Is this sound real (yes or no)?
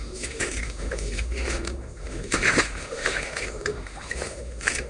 no